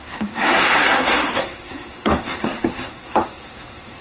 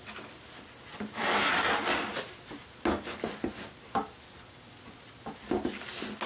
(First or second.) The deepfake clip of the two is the first